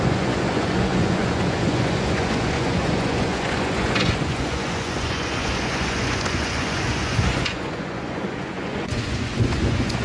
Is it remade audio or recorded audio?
remade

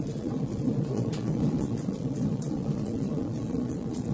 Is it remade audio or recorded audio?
remade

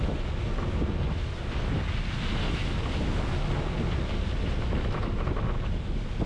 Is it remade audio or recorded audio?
recorded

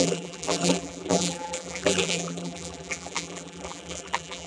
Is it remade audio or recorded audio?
remade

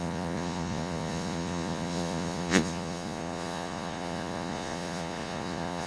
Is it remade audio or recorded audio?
remade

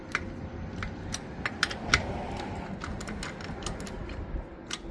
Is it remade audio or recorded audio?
recorded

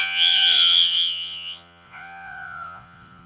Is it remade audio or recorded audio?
remade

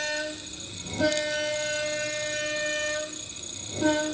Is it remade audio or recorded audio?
recorded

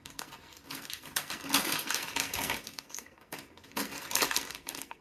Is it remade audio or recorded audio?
remade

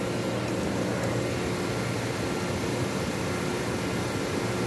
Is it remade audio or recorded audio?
recorded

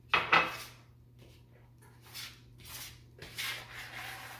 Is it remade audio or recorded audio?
recorded